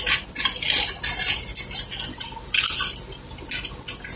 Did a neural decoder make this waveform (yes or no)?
no